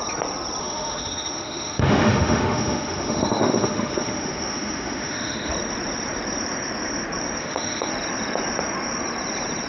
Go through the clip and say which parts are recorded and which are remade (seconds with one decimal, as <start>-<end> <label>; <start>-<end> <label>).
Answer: 0.0-0.6 recorded; 0.6-5.5 remade; 5.5-7.4 recorded; 7.4-7.9 remade; 7.9-9.7 recorded